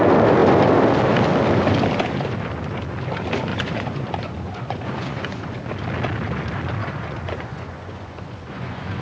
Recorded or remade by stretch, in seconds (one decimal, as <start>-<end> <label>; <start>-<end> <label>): 0.0-3.5 recorded; 3.5-5.6 remade; 5.6-6.8 recorded; 6.8-9.0 remade